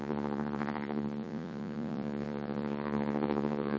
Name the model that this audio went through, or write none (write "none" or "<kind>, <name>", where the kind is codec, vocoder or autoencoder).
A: vocoder, Vocos